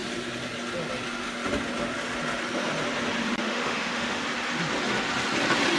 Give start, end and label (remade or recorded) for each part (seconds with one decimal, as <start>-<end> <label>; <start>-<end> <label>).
0.0-3.4 recorded; 3.4-4.2 remade; 4.2-5.8 recorded